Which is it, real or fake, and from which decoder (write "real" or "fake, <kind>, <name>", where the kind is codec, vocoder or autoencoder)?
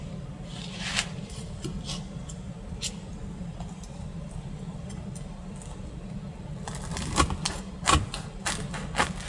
real